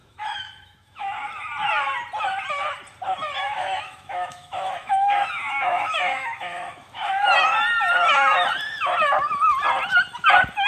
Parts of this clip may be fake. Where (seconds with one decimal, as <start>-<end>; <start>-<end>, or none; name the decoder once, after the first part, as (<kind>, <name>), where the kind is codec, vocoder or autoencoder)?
0.0-1.1 (autoencoder, DAC-VAE); 3.4-7.3